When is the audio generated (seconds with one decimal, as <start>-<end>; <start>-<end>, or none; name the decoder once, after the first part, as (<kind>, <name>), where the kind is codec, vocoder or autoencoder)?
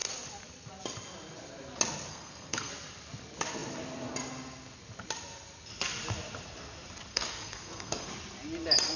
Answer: 2.1-2.7 (codec, SNAC); 7.1-8.1